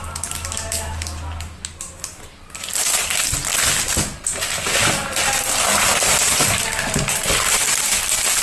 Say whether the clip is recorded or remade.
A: recorded